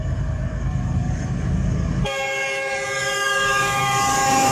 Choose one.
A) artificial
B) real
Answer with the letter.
A